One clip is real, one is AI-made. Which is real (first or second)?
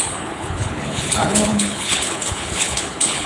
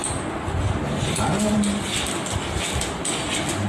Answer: second